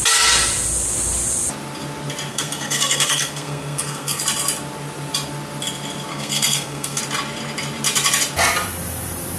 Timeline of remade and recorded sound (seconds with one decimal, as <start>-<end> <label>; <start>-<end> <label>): 0.0-2.3 recorded; 2.3-4.2 remade; 4.2-6.1 recorded; 6.1-7.0 remade; 7.0-9.4 recorded